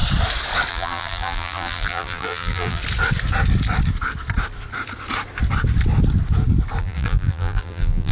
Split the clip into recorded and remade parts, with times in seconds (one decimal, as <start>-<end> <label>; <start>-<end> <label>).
0.0-0.7 recorded; 0.7-2.8 remade; 2.8-6.8 recorded; 6.8-8.1 remade